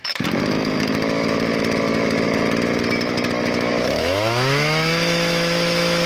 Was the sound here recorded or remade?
remade